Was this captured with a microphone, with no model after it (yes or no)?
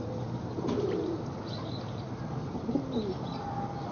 yes